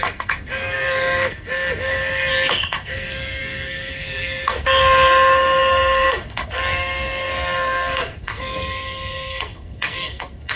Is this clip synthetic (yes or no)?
yes